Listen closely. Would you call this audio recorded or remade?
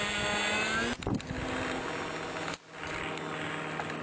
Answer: recorded